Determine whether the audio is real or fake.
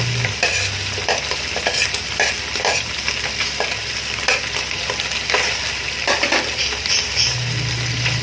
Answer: fake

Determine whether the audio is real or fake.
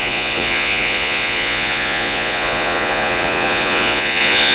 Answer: fake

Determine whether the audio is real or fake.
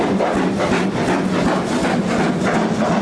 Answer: real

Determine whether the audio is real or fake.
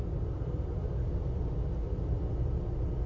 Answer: real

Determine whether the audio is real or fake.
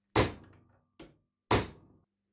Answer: real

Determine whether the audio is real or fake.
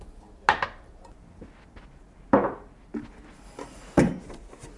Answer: real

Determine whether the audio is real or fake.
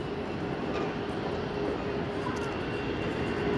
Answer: real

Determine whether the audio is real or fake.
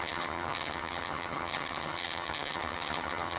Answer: fake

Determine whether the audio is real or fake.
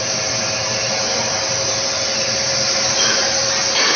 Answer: real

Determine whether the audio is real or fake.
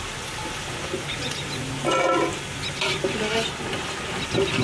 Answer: real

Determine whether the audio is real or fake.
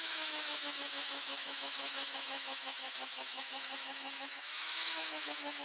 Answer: fake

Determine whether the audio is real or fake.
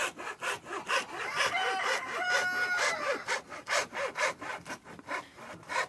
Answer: real